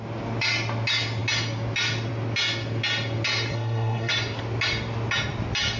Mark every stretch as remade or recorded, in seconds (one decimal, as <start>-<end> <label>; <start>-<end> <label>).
0.0-3.5 recorded; 3.5-4.1 remade; 4.1-5.8 recorded